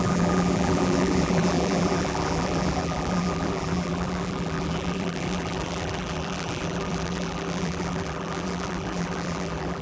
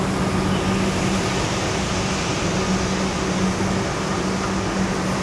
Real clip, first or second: second